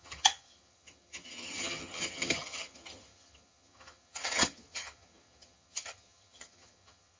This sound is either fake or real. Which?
fake